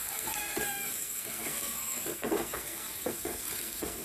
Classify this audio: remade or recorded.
remade